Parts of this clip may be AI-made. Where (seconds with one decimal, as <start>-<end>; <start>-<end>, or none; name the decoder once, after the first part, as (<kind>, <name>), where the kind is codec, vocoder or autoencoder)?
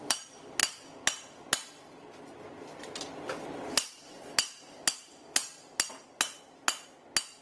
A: none